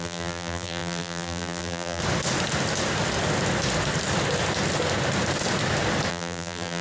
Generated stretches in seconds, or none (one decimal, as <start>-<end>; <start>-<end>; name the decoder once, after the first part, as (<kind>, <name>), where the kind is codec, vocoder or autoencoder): 0.0-2.0 (vocoder, BigVGAN v2); 6.1-6.8